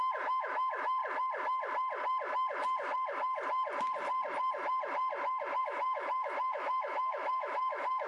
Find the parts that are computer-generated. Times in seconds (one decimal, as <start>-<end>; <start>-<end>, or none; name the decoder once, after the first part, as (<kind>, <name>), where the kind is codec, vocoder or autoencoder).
0.0-1.0 (autoencoder, DAC-VAE); 5.6-8.1